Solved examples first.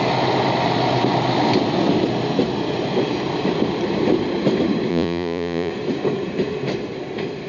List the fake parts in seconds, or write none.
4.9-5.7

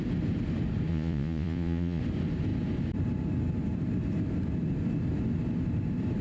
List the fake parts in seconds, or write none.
0.9-2.0

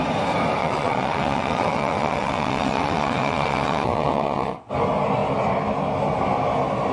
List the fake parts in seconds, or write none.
0.6-4.7

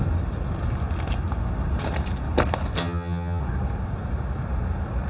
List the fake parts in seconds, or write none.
2.8-3.4